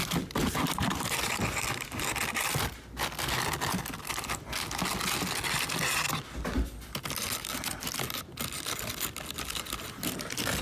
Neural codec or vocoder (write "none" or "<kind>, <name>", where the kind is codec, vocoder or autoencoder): none